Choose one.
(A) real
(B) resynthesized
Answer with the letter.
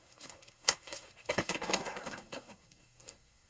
B